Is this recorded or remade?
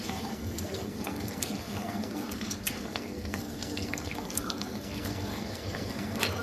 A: remade